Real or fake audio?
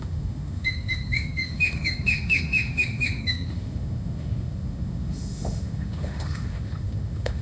fake